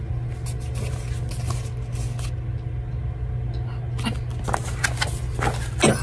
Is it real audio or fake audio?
real